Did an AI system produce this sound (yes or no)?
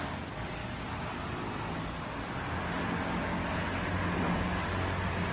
no